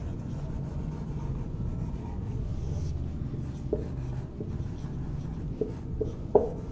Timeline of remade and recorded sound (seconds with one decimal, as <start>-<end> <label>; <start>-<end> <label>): 0.0-2.5 remade; 2.5-5.4 recorded; 5.4-6.7 remade